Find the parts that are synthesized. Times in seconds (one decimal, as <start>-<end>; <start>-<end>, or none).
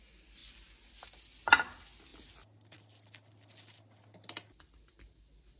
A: none